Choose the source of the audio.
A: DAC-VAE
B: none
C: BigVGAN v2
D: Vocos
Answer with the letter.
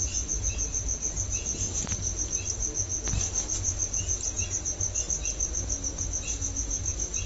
B